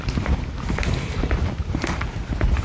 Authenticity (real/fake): real